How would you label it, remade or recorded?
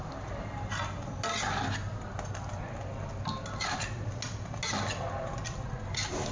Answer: recorded